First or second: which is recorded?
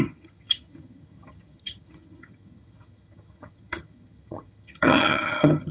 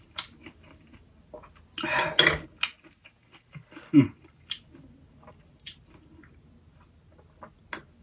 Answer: second